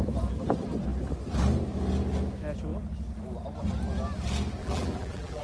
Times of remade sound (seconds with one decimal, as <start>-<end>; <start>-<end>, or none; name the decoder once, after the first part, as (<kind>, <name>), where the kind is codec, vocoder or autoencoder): 4.6-5.4 (vocoder, BigVGAN v2)